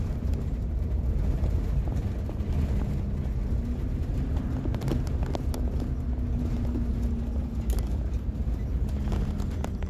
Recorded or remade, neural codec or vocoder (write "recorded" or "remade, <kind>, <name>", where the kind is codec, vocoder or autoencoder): recorded